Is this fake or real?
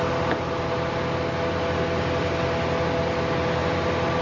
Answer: real